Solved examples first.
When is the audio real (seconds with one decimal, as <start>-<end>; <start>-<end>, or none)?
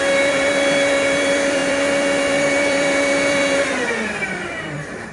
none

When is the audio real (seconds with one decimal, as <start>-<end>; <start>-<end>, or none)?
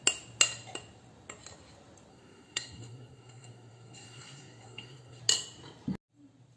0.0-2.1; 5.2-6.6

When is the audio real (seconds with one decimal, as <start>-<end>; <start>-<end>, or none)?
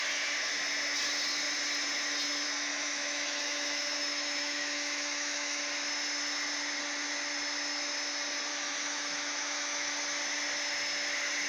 0.0-2.7; 5.6-8.5; 9.9-11.5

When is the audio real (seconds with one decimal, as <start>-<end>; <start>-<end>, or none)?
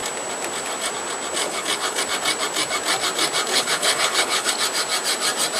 0.0-1.4; 2.0-3.5; 4.5-5.6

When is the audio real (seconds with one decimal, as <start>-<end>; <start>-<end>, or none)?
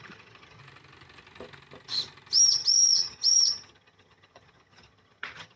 0.6-2.5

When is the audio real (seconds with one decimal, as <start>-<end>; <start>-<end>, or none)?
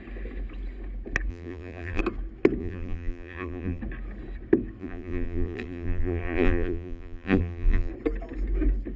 0.0-1.3; 2.0-2.6; 3.8-4.8; 7.9-9.0